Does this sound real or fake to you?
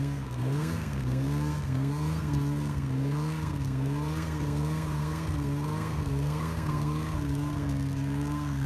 fake